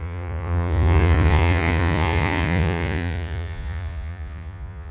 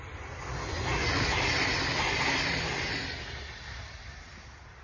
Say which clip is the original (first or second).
second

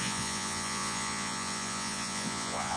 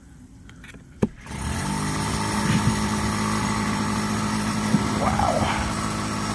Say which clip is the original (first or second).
second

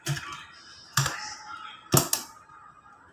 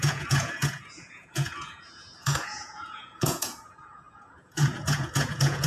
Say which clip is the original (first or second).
first